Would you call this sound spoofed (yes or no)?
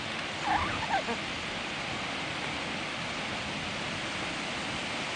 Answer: no